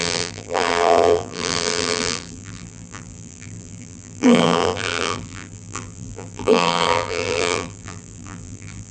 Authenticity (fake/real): fake